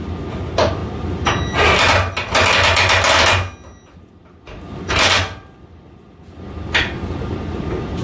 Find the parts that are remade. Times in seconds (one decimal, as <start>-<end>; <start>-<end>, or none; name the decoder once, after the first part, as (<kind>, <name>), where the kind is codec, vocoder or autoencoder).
none